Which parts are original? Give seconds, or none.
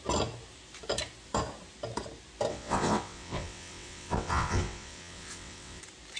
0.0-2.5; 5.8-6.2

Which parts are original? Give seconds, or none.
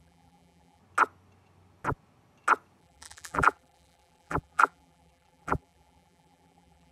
0.8-2.8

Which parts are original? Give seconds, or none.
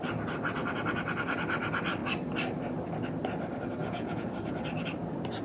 0.0-3.8; 4.3-5.4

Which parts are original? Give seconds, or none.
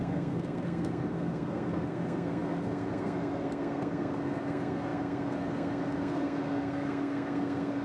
none